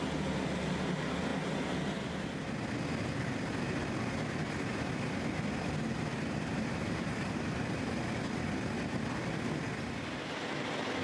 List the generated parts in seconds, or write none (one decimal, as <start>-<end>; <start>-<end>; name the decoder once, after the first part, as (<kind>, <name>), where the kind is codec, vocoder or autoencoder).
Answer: 6.1-7.7 (vocoder, BigVGAN v2)